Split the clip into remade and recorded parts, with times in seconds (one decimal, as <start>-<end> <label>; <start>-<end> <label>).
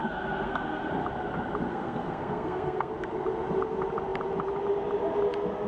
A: 0.0-0.9 remade; 0.9-1.7 recorded; 1.7-2.9 remade; 2.9-5.7 recorded